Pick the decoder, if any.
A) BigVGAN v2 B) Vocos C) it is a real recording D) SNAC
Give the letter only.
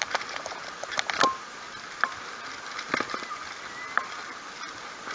C